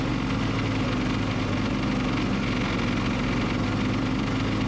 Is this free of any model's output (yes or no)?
yes